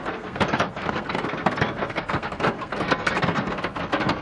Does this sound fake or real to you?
fake